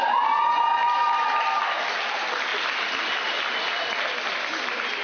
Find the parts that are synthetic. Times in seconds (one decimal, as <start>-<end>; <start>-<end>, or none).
0.8-1.4